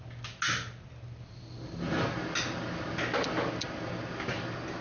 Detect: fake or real real